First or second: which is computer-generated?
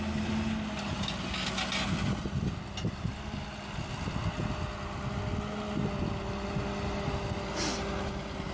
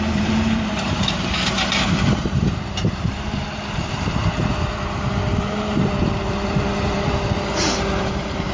second